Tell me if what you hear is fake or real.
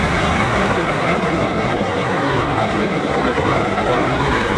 fake